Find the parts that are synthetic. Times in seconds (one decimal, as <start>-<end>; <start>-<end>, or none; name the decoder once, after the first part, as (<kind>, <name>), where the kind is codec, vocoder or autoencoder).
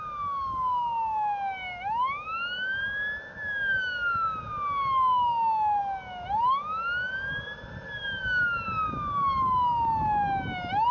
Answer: none